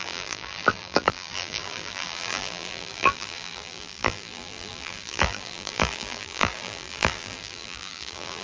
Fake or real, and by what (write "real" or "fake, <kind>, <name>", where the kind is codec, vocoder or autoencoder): fake, vocoder, BigVGAN v2